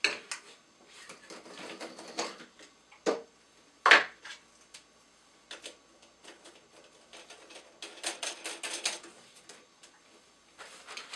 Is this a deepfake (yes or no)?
no